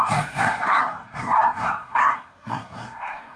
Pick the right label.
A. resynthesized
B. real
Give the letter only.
A